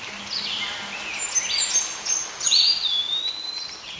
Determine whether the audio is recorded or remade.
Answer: recorded